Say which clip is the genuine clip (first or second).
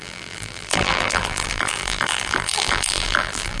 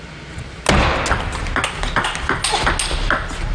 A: second